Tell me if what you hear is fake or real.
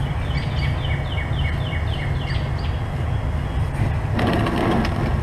real